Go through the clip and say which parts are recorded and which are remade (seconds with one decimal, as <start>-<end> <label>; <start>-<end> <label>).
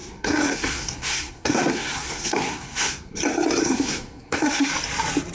0.0-3.2 remade; 3.2-3.6 recorded; 3.6-4.7 remade; 4.7-5.3 recorded